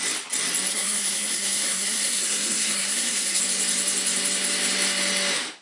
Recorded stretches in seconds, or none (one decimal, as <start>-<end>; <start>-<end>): 0.0-0.7; 3.4-5.6